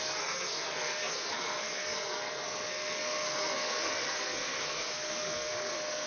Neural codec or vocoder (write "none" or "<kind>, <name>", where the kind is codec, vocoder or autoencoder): codec, SNAC